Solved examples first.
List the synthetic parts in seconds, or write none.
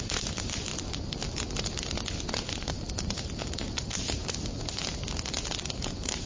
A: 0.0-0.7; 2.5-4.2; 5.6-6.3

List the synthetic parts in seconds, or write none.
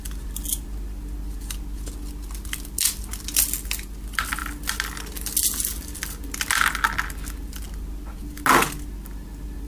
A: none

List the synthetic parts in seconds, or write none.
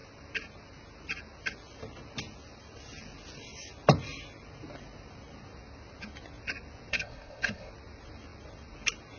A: 6.9-7.7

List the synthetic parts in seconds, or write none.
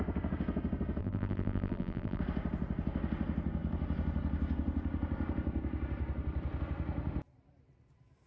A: 1.0-2.2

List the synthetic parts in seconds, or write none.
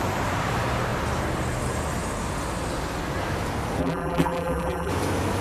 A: 3.8-4.9